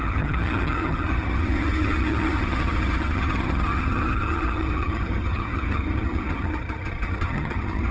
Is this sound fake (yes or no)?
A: yes